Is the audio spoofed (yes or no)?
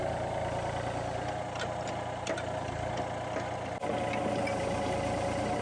no